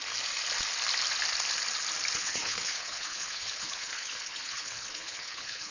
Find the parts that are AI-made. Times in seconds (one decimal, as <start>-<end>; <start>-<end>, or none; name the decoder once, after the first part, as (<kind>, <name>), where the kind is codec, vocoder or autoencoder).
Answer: 2.2-5.7 (codec, HILCodec)